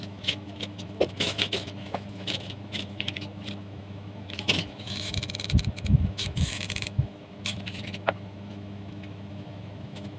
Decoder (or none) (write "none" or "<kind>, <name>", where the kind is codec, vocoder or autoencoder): autoencoder, DAC-VAE